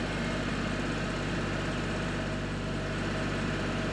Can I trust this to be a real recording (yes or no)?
yes